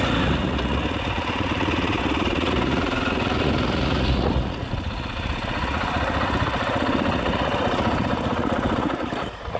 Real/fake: fake